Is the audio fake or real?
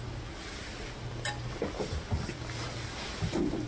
real